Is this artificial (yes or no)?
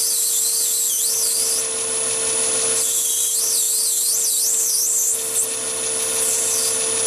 no